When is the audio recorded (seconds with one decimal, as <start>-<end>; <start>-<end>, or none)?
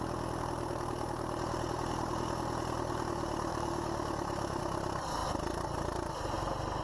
0.0-3.5; 4.6-6.8